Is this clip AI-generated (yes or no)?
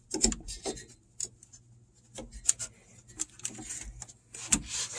no